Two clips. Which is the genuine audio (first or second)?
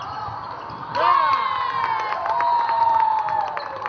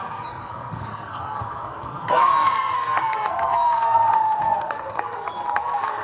first